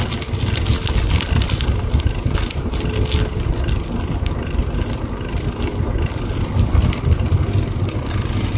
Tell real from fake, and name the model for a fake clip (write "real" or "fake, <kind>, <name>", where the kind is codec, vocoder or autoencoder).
real